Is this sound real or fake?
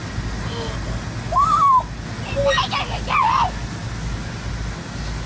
real